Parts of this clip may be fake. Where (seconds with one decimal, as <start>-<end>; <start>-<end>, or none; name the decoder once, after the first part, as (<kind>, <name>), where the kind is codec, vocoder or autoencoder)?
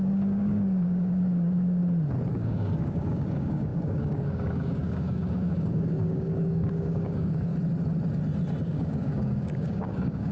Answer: 0.0-1.8 (codec, DAC); 2.3-7.5; 8.6-10.3